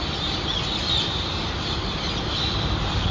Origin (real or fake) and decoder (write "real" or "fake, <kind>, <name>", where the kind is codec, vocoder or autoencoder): real